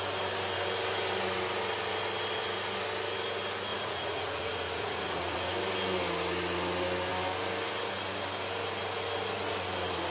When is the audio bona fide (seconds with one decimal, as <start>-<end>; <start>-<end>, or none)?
0.0-3.7; 5.5-10.1